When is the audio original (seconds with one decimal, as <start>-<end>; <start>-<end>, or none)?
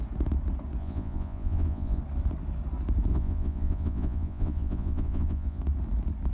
0.0-0.8; 2.0-3.1; 5.6-6.3